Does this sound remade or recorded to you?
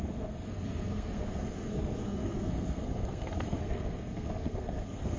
remade